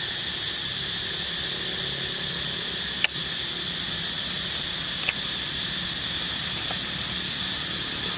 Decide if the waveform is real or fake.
real